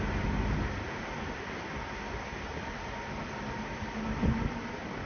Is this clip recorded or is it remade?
recorded